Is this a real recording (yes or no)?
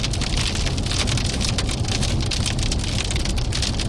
yes